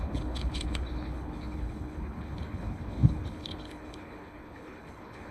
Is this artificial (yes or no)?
yes